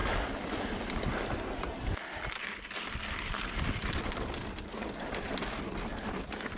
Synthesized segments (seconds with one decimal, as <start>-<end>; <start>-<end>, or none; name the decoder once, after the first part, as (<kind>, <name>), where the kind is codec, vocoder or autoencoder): none